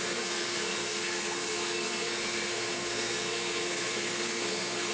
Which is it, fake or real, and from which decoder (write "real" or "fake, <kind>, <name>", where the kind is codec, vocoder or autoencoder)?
fake, codec, SNAC